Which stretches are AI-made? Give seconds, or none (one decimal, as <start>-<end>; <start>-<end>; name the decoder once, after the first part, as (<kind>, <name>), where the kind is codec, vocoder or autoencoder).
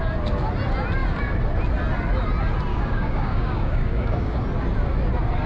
2.7-4.4 (codec, DAC)